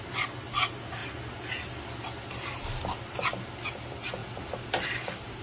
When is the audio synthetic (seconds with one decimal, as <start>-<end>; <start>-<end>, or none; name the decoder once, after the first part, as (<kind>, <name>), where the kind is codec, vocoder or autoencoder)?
none

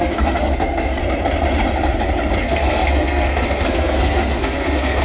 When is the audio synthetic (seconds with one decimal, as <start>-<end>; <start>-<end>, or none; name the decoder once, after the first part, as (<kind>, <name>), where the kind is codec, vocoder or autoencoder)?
0.0-1.0 (codec, SNAC); 2.4-5.0

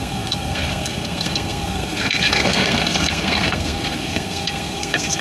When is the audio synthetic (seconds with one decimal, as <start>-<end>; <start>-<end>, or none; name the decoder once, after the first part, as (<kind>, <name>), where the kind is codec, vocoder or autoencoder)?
0.0-5.2 (codec, SNAC)

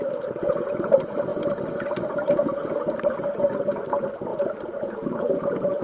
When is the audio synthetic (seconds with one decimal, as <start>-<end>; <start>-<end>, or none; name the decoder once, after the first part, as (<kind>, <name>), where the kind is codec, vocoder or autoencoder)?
none

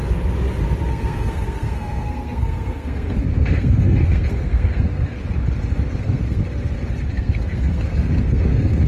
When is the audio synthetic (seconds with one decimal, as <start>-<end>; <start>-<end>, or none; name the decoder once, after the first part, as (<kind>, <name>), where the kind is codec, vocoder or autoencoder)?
0.9-5.2 (codec, SNAC); 6.0-6.4; 7.1-8.9

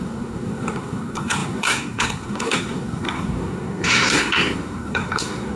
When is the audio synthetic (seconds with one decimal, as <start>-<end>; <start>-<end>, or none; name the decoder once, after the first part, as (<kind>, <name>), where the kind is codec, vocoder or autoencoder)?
0.0-5.6 (codec, SNAC)

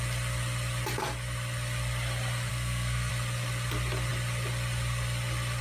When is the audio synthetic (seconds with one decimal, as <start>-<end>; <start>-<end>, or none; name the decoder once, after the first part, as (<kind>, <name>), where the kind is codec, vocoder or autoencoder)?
2.5-3.1 (codec, SNAC)